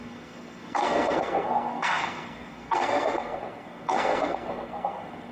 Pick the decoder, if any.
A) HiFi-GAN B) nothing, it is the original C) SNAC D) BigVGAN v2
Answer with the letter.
C